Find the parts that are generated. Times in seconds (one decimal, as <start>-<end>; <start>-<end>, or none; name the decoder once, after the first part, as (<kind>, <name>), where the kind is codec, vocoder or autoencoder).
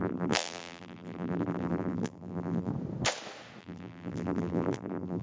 0.0-2.7 (vocoder, BigVGAN v2); 3.6-5.2